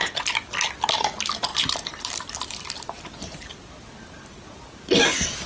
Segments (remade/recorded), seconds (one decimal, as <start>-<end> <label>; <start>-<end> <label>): 0.0-1.5 recorded; 1.5-3.0 remade; 3.0-5.5 recorded

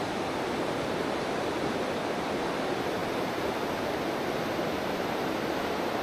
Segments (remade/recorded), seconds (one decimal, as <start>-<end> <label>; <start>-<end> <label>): 0.0-3.0 recorded; 3.0-4.0 remade; 4.0-6.0 recorded

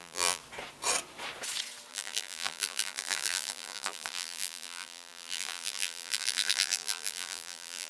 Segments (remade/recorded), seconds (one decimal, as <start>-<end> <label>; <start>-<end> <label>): 0.0-0.4 remade; 0.4-1.9 recorded; 1.9-7.9 remade

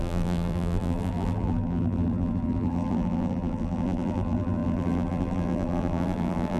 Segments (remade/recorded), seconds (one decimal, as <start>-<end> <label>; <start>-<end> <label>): 0.0-6.6 remade

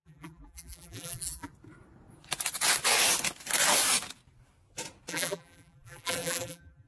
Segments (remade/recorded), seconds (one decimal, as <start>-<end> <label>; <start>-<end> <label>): 0.0-1.5 remade; 1.5-5.1 recorded; 5.1-6.9 remade

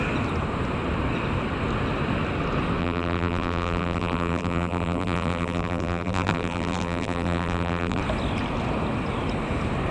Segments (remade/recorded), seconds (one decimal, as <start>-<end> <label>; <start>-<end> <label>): 0.0-2.8 recorded; 2.8-8.0 remade; 8.0-9.9 recorded

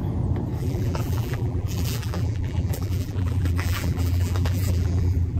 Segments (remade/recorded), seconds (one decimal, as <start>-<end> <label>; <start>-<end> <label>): 0.0-0.6 recorded; 0.6-5.4 remade

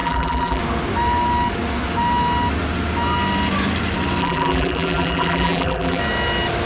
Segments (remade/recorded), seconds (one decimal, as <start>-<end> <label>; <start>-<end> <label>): 0.0-0.6 remade; 0.6-4.2 recorded; 4.2-6.0 remade; 6.0-6.7 recorded